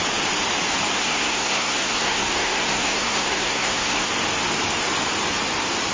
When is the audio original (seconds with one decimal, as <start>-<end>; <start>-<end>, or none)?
0.0-1.0; 4.1-5.9